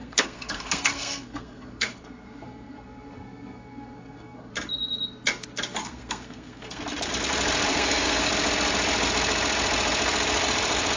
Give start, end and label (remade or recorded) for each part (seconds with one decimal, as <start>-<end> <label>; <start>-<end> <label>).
0.0-4.5 remade; 4.5-5.8 recorded; 5.8-6.8 remade; 6.8-7.7 recorded; 7.7-8.3 remade; 8.3-11.0 recorded